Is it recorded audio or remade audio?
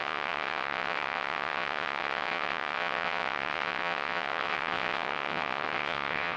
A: remade